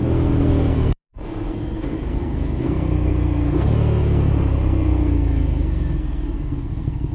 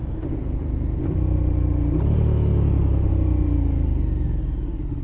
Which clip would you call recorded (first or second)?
second